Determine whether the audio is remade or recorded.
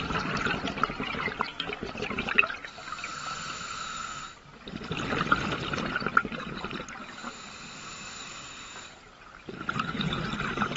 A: recorded